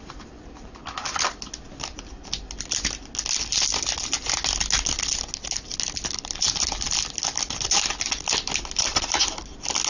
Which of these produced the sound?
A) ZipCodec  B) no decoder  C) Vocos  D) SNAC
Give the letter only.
B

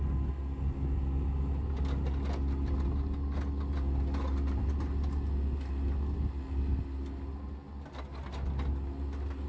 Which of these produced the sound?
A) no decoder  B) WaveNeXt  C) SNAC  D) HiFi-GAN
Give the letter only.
A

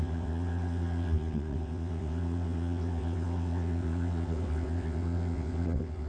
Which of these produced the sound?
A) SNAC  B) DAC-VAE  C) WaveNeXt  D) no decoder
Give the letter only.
C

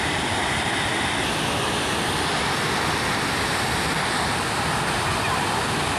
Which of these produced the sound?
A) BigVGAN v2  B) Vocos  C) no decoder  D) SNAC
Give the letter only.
C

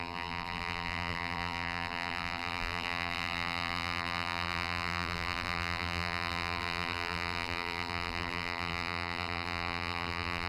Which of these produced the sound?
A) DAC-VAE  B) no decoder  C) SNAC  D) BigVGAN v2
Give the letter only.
D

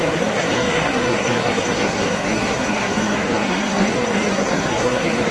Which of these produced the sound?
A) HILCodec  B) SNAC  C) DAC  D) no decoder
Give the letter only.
B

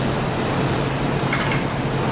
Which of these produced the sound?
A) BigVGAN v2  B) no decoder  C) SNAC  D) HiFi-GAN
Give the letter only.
B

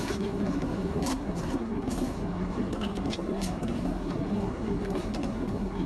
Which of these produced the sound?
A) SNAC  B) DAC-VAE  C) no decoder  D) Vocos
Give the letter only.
A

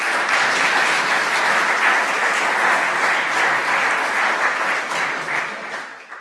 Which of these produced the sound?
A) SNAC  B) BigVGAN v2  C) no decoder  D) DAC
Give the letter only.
B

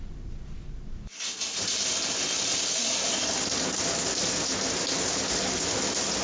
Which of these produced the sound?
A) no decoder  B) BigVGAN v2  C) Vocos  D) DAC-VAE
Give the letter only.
A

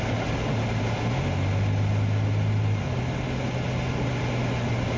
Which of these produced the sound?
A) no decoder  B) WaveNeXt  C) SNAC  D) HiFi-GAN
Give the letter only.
A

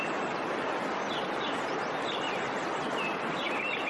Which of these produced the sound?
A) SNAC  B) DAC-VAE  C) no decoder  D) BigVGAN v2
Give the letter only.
C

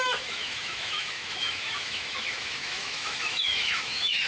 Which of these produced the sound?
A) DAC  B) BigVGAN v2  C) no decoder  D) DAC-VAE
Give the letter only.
D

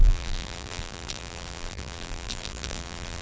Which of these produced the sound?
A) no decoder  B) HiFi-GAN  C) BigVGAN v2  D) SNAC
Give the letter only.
C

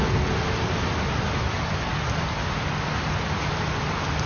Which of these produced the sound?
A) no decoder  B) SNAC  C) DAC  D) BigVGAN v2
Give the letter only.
A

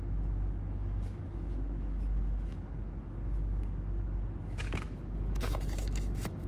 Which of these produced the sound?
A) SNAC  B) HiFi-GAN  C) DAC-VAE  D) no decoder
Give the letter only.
C